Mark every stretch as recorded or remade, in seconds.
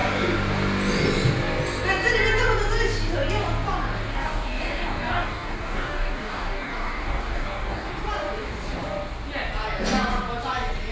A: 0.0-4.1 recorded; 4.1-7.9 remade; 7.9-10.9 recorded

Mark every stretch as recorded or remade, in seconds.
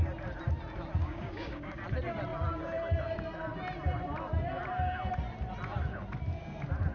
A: 0.0-1.0 recorded; 1.0-1.8 remade; 1.8-6.9 recorded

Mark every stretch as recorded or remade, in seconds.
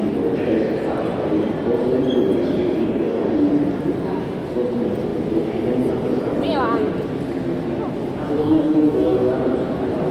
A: 0.0-2.8 recorded; 2.8-3.5 remade; 3.5-8.4 recorded; 8.4-9.3 remade; 9.3-10.1 recorded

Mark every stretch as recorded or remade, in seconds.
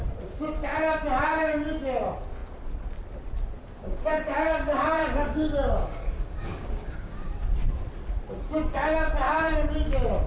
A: 0.0-3.6 recorded; 3.6-7.3 remade; 7.3-10.3 recorded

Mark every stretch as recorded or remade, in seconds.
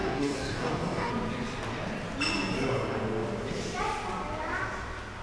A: 0.0-1.1 remade; 1.1-5.2 recorded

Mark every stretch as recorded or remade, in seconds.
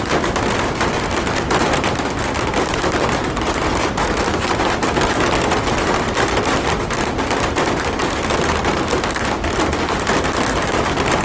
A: 0.0-11.2 recorded